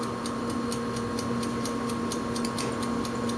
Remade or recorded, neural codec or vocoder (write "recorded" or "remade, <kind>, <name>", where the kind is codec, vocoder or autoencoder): recorded